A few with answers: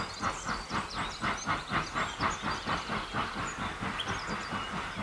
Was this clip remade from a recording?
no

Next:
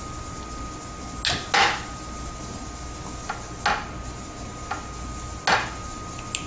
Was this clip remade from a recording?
no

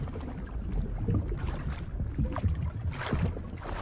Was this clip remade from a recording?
no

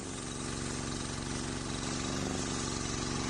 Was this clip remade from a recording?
no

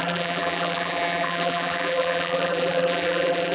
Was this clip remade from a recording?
yes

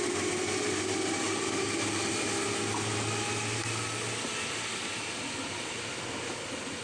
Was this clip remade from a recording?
no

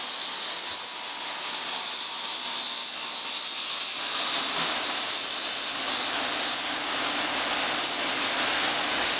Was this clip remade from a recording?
no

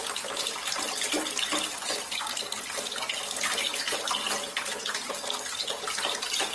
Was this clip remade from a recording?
no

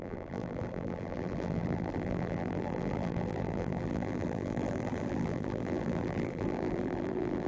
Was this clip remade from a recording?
yes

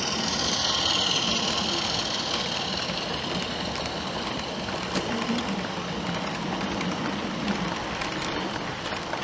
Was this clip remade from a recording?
yes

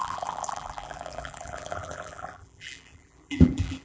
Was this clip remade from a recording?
yes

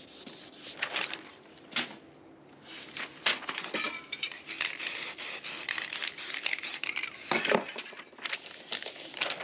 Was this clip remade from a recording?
no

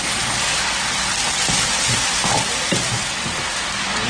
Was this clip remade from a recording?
no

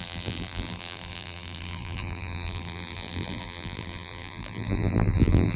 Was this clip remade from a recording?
yes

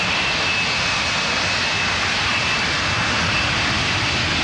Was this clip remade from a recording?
no